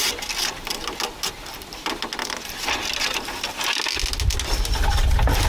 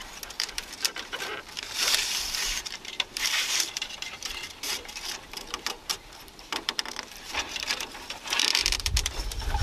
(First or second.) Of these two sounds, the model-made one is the second